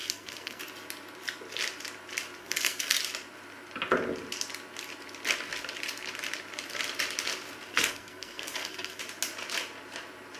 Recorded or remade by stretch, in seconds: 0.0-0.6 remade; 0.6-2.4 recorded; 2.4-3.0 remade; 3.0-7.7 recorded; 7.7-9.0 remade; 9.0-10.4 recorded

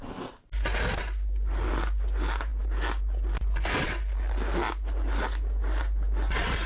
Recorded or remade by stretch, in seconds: 0.0-6.7 recorded

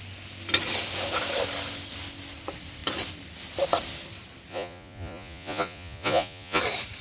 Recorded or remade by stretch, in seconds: 0.0-4.5 recorded; 4.5-6.6 remade; 6.6-7.0 recorded

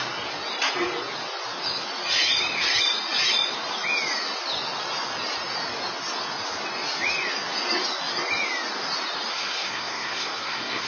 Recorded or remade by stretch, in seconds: 0.0-9.3 recorded; 9.3-10.9 remade

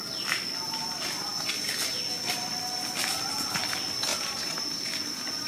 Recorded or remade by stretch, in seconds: 0.0-4.1 recorded; 4.1-4.8 remade; 4.8-5.5 recorded